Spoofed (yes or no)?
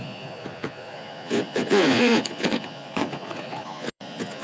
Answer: yes